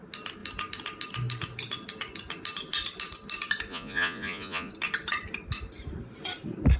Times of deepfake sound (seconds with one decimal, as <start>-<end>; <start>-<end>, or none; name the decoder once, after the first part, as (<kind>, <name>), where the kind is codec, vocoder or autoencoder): 3.7-4.7 (vocoder, Vocos)